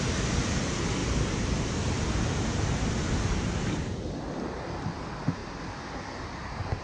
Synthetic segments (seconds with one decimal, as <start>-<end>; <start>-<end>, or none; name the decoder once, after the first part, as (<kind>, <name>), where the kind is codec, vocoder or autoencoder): none